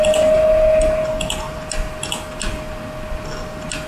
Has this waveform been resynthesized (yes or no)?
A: no